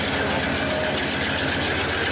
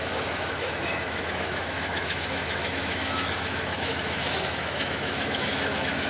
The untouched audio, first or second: first